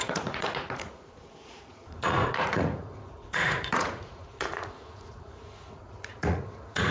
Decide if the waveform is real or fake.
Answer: fake